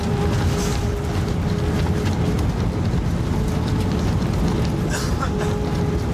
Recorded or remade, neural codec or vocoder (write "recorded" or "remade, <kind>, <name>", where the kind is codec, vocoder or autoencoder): recorded